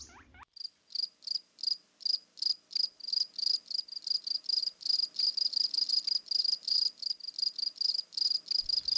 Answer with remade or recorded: recorded